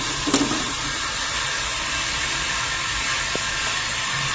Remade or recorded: recorded